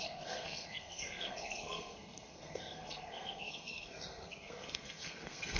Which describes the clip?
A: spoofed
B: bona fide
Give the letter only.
A